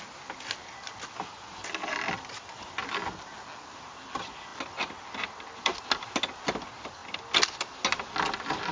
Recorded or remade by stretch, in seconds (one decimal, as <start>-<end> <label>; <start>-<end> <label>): 0.0-8.7 recorded